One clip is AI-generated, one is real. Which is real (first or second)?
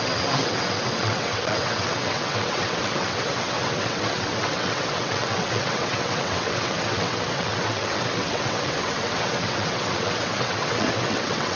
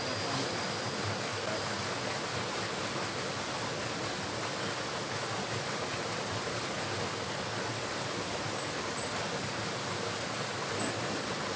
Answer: second